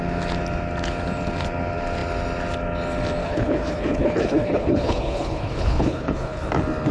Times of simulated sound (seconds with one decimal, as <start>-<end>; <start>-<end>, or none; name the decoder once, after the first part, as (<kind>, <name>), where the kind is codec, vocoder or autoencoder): 3.2-6.5 (codec, HILCodec)